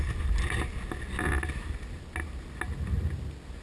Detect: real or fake real